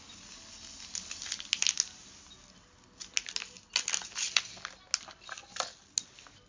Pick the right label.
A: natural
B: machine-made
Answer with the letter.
A